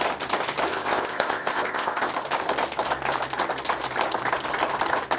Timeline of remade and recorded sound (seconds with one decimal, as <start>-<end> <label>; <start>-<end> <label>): 0.0-0.7 recorded; 0.7-2.1 remade; 2.1-5.2 recorded